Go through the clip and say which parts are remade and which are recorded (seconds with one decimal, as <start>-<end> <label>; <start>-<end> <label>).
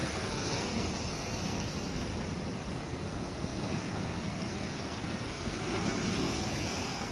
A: 0.0-2.1 remade; 2.1-2.7 recorded; 2.7-7.1 remade